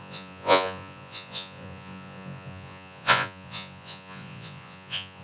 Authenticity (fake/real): fake